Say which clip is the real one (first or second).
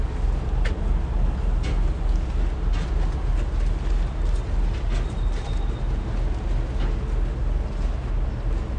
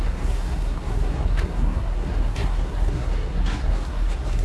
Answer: first